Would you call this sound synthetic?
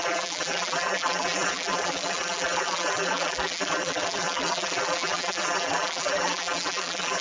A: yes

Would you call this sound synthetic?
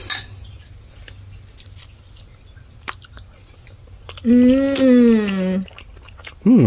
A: no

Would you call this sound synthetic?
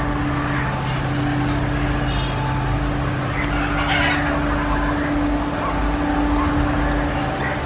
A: no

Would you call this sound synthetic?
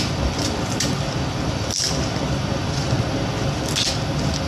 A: no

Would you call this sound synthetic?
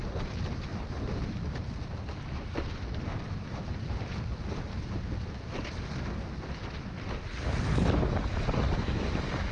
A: no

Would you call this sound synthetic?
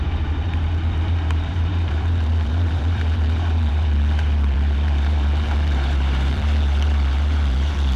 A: yes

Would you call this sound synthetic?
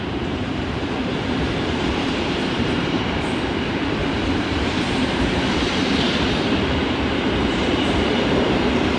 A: yes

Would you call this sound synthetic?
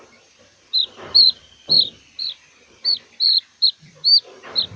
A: yes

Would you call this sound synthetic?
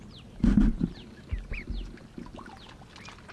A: no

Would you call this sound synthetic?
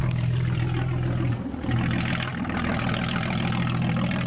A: yes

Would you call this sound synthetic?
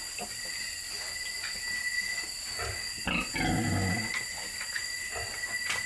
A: no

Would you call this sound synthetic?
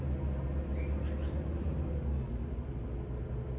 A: no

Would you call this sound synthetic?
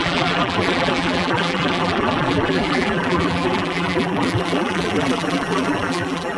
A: yes